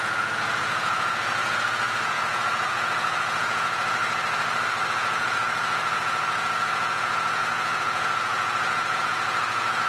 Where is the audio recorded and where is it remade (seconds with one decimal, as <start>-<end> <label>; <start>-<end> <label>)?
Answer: 0.0-4.0 remade; 4.0-4.9 recorded; 4.9-9.9 remade